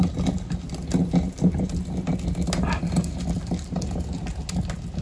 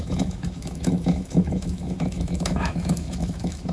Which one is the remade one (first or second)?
second